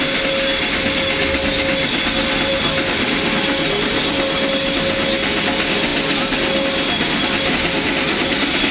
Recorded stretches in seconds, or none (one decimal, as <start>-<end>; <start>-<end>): 0.0-8.7